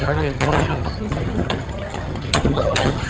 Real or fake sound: fake